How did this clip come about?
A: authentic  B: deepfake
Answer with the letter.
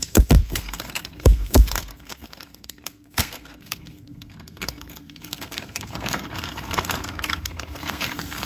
B